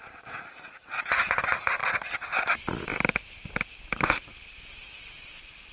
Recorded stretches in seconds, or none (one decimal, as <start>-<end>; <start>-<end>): 0.0-5.7